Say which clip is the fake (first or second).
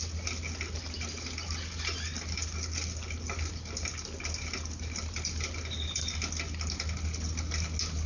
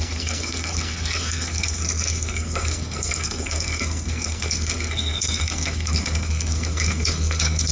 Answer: second